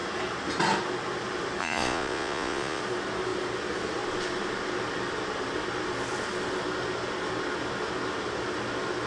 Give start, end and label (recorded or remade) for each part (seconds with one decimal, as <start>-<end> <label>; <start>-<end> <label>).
0.0-1.6 recorded; 1.6-2.8 remade; 2.8-9.1 recorded